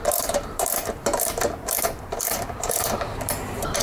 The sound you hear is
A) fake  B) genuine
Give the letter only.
A